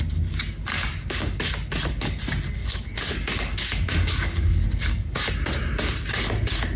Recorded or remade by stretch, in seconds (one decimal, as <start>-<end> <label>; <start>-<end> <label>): 0.0-0.7 recorded; 0.7-1.4 remade; 1.4-2.6 recorded; 2.6-5.3 remade; 5.3-6.8 recorded